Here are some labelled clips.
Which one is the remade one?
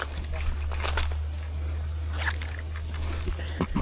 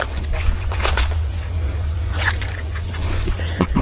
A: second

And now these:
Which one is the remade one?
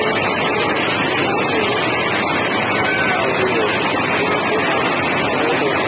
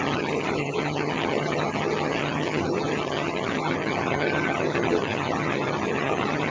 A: second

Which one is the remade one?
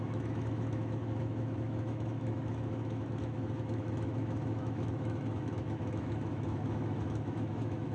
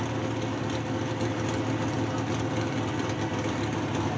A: first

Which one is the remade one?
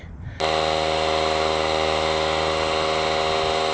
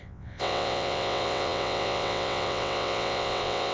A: second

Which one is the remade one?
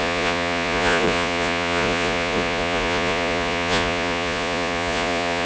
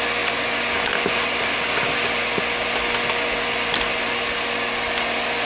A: first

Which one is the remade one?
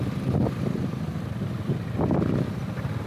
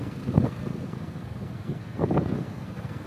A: second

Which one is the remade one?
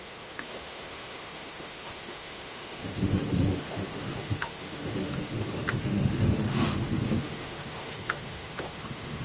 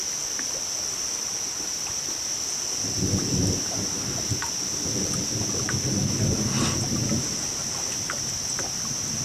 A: first